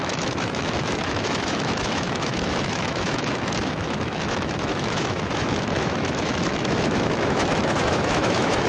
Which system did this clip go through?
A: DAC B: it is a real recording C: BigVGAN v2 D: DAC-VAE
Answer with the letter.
D